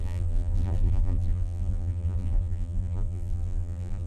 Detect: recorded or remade remade